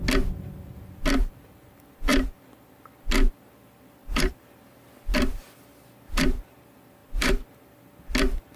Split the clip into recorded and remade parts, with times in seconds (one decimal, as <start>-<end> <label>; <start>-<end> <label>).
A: 0.0-4.0 recorded; 4.0-4.7 remade; 4.7-7.0 recorded; 7.0-7.6 remade; 7.6-8.6 recorded